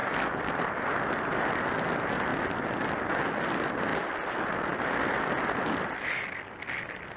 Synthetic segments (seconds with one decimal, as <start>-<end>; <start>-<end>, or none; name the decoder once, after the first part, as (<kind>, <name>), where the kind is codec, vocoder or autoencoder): none